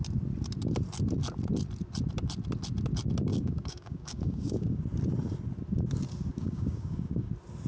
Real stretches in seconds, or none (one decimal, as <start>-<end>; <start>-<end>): 0.0-3.3; 4.8-6.3; 7.3-7.7